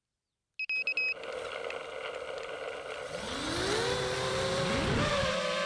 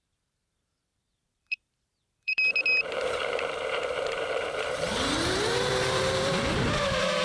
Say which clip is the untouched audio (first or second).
first